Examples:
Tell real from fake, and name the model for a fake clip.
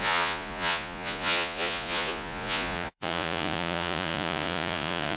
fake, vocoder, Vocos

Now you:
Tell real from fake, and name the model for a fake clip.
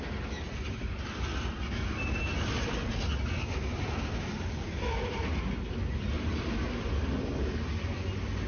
real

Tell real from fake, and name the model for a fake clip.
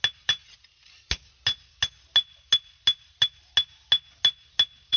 real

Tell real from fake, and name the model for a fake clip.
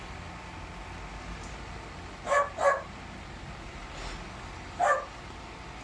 real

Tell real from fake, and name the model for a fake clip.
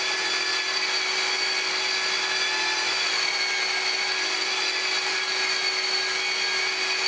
real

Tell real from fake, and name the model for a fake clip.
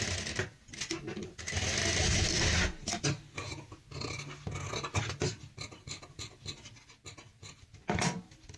real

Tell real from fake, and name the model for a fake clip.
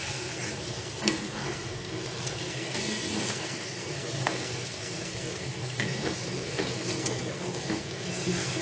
fake, codec, SNAC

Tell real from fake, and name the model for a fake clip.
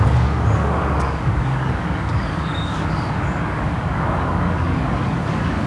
fake, codec, DAC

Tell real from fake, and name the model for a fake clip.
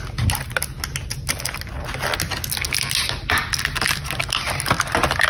real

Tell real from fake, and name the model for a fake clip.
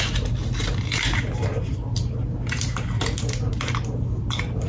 real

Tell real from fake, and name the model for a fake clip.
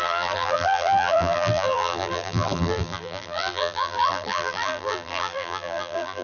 fake, vocoder, BigVGAN v2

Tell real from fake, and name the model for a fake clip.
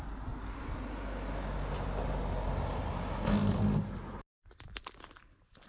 real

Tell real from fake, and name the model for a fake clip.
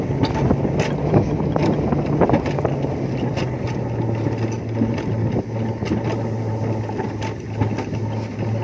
real